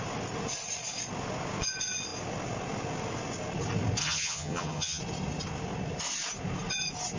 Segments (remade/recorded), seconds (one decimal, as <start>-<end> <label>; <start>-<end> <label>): 0.0-4.0 recorded; 4.0-5.0 remade; 5.0-7.2 recorded